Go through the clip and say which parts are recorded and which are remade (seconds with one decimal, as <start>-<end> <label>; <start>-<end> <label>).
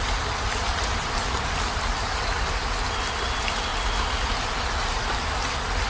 0.0-3.7 remade; 3.7-4.7 recorded; 4.7-5.9 remade